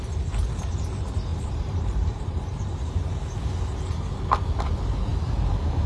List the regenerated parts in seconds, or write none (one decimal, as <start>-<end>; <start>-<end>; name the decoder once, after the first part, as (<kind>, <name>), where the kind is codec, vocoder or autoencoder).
1.3-3.2 (vocoder, BigVGAN v2)